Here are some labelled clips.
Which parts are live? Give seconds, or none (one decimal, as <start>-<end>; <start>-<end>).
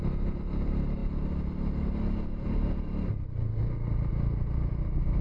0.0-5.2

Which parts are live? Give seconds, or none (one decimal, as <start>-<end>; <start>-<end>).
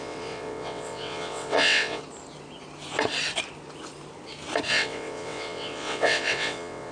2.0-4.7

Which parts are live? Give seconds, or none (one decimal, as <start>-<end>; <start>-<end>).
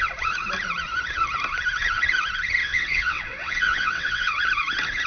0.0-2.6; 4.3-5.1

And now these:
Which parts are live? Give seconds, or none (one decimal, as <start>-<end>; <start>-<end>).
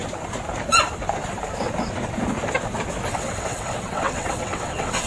0.0-3.1